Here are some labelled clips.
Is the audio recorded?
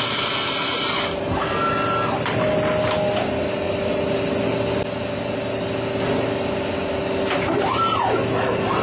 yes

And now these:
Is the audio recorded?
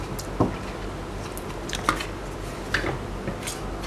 yes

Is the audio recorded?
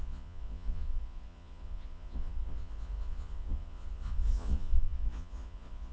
no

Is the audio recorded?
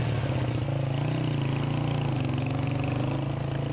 yes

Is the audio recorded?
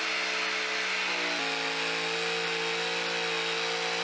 yes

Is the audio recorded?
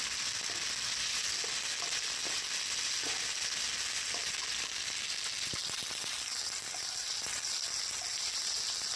yes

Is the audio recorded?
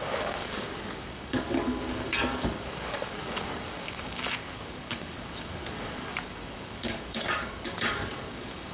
no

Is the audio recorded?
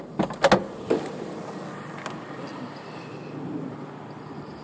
yes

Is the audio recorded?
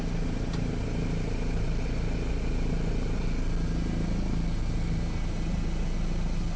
yes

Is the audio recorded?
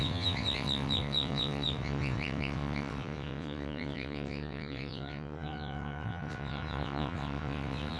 no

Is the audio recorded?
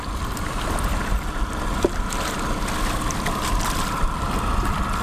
yes